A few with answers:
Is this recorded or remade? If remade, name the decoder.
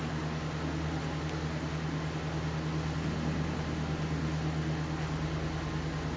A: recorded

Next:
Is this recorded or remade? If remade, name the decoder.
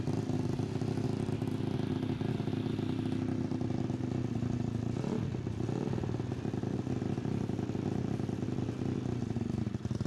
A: recorded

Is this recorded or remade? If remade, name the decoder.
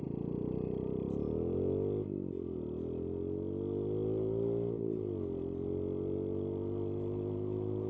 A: recorded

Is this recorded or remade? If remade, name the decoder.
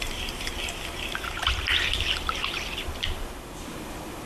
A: recorded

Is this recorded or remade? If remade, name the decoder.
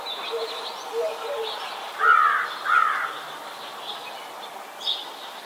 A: recorded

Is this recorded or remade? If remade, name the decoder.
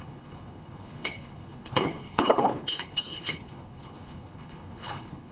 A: remade, codec, HILCodec